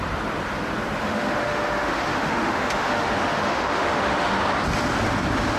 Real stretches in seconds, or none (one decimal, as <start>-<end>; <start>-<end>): 0.0-1.0; 4.4-5.6